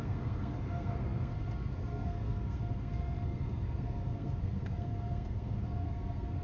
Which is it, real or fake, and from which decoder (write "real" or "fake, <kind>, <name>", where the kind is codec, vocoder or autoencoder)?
fake, codec, SNAC